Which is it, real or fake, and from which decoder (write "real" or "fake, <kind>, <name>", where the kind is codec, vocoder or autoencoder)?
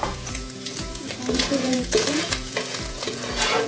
fake, vocoder, Vocos